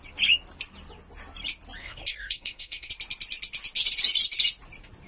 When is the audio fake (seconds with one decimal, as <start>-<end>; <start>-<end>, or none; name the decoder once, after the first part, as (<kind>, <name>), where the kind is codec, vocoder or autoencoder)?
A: 1.8-2.9 (codec, SNAC)